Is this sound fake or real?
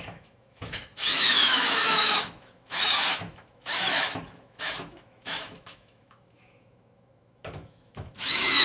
fake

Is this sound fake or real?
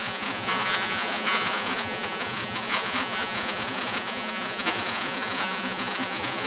fake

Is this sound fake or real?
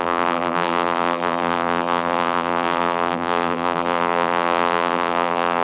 fake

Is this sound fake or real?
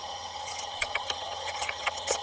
fake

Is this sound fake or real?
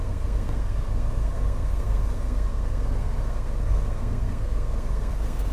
fake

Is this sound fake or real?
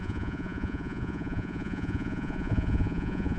fake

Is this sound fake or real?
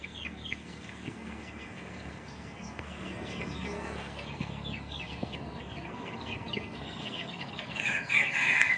fake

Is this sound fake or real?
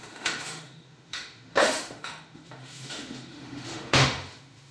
fake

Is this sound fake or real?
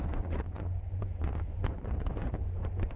fake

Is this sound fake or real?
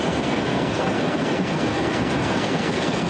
fake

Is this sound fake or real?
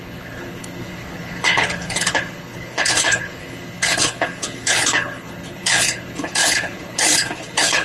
fake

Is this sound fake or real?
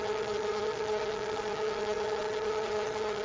fake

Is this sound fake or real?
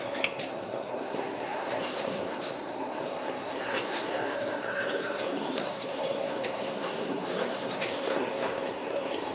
fake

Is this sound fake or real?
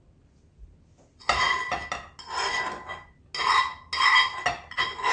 real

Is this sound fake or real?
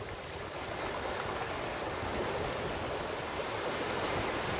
real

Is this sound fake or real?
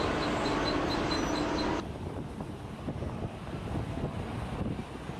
real